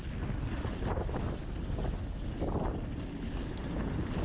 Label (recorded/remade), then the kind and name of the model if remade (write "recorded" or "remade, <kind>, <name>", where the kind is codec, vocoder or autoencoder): recorded